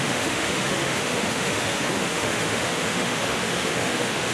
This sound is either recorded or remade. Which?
remade